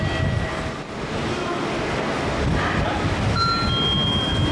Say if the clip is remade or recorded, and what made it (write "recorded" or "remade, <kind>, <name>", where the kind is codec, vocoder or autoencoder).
recorded